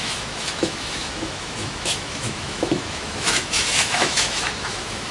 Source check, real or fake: fake